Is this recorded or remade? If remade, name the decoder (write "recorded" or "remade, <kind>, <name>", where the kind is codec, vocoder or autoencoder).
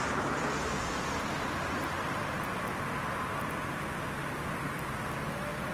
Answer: recorded